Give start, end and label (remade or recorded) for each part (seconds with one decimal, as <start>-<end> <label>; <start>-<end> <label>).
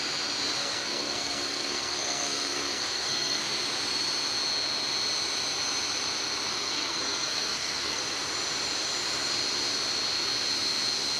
0.0-0.6 recorded; 0.6-3.4 remade; 3.4-6.5 recorded; 6.5-8.0 remade; 8.0-11.2 recorded